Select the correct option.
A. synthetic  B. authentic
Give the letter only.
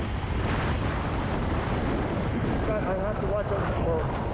B